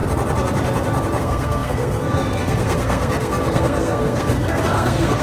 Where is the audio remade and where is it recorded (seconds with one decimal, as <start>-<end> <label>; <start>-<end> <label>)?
0.0-1.2 recorded; 1.2-5.2 remade